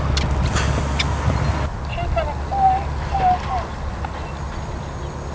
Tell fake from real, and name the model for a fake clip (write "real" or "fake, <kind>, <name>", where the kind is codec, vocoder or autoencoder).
real